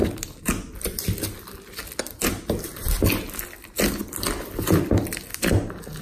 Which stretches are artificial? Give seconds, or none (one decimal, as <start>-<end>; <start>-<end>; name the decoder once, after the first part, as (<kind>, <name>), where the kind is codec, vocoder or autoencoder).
none